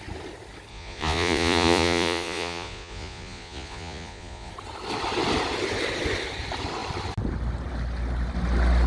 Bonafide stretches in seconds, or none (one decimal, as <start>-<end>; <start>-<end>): 0.0-0.7; 4.5-8.9